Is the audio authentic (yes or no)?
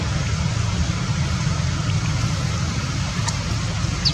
yes